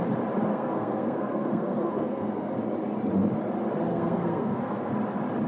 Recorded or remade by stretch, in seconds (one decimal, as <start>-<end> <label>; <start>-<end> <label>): 0.0-0.5 recorded; 0.5-2.6 remade; 2.6-3.9 recorded; 3.9-4.9 remade; 4.9-5.5 recorded